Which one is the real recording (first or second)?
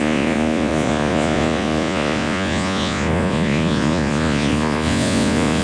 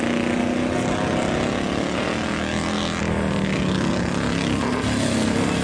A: second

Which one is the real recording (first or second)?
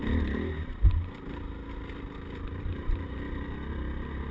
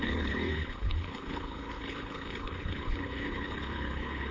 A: first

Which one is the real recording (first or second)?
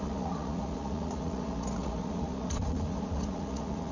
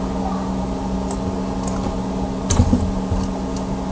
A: second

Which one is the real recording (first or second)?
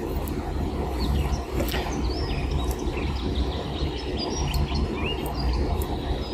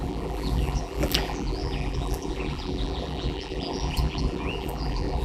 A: first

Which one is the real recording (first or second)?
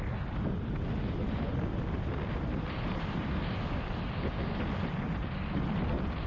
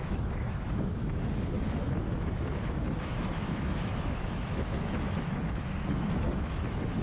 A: first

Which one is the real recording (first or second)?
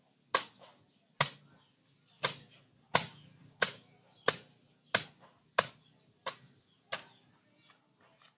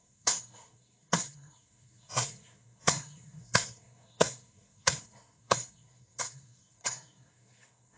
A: first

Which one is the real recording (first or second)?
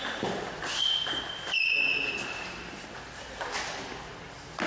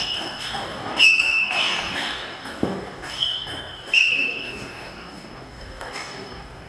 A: first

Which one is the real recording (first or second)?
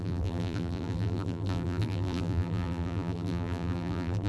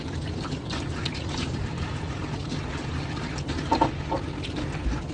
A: second